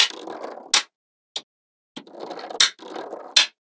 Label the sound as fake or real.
real